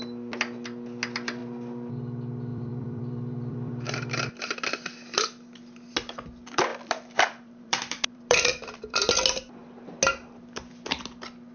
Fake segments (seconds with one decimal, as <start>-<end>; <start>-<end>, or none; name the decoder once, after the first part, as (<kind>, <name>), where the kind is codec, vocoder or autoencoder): 2.5-3.7 (vocoder, BigVGAN v2); 6.7-9.1